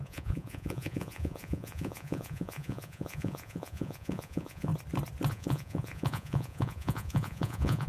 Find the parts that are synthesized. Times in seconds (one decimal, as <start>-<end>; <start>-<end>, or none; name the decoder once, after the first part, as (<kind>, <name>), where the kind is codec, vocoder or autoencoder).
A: 0.0-4.7 (vocoder, Vocos); 5.3-7.9